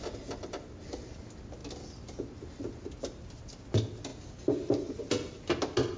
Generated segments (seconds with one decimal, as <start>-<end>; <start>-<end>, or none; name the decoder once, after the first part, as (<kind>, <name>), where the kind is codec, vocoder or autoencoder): none